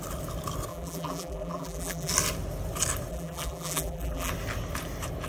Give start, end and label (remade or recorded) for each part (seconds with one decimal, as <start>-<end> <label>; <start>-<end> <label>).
0.0-0.7 recorded; 0.7-2.1 remade; 2.1-3.1 recorded; 3.1-4.3 remade; 4.3-5.3 recorded